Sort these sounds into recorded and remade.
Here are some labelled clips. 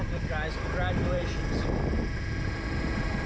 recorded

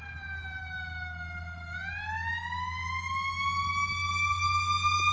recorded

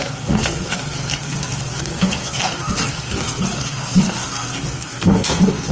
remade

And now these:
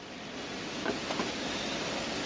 recorded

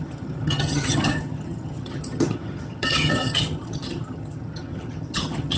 remade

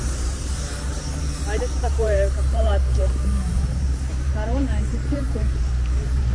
remade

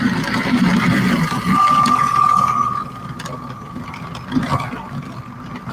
recorded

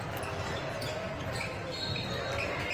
recorded